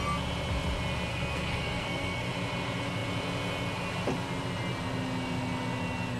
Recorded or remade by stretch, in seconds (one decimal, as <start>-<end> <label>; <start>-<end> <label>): 0.0-1.1 recorded; 1.1-2.3 remade; 2.3-6.2 recorded